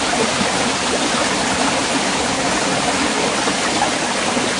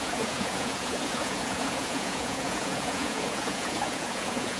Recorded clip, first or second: first